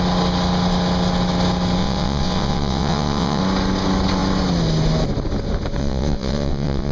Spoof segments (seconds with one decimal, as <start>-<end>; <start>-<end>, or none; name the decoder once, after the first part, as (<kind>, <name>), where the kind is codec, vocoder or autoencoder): 1.8-3.4 (vocoder, WaveNeXt); 5.8-6.9